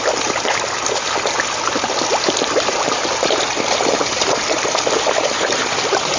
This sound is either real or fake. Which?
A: real